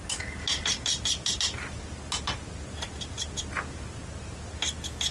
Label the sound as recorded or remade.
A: recorded